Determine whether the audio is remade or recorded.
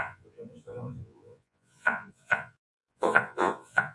remade